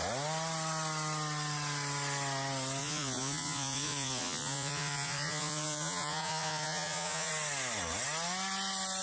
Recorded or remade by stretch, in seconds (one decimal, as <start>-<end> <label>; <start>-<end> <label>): 0.0-2.8 recorded; 2.8-7.3 remade; 7.3-9.0 recorded